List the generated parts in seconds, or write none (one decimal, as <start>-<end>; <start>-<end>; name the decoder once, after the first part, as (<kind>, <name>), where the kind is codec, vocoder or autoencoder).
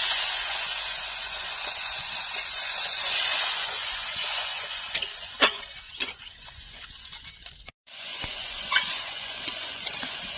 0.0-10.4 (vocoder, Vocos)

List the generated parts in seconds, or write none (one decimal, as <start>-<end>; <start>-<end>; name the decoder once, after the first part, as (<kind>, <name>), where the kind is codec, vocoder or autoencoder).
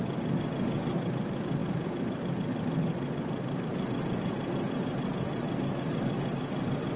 none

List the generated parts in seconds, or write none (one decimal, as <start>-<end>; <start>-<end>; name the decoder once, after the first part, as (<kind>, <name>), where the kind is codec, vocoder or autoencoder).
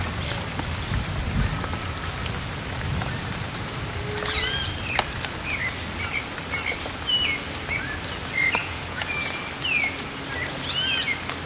8.6-9.4 (vocoder, Vocos)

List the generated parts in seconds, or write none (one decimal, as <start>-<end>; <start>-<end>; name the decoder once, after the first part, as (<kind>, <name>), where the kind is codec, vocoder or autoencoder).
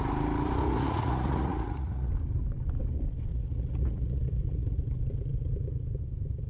0.6-2.1 (vocoder, Vocos); 3.3-4.8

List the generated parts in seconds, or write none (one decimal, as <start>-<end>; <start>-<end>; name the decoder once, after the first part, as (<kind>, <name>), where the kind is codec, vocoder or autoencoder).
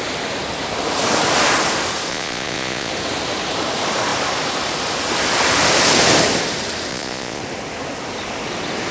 2.1-2.9 (vocoder, Vocos); 6.9-7.4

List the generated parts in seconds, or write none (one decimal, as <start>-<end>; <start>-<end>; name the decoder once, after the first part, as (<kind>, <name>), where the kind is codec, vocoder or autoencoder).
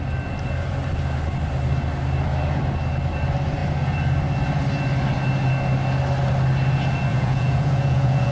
7.1-8.3 (vocoder, Vocos)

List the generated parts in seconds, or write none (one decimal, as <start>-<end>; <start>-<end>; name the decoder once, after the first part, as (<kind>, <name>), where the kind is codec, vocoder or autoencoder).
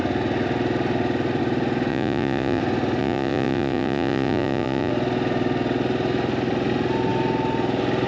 1.9-2.6 (vocoder, Vocos); 3.0-4.9